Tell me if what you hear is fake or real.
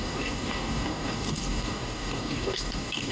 fake